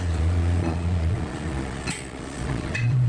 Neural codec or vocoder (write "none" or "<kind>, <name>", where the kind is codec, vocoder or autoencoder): vocoder, Vocos